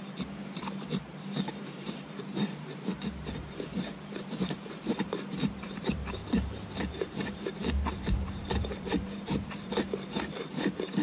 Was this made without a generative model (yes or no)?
no